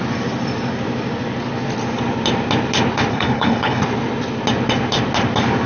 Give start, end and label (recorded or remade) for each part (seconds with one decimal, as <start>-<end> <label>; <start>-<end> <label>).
0.0-3.1 recorded; 3.1-3.8 remade; 3.8-5.7 recorded